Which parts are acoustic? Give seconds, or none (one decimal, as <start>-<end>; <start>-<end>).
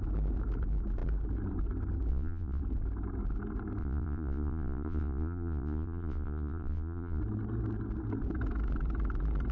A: 0.0-2.1; 2.6-3.8; 7.2-9.5